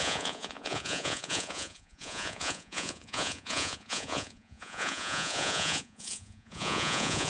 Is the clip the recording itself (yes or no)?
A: no